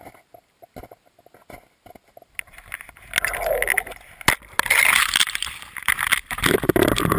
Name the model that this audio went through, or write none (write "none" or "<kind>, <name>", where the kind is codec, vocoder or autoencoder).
none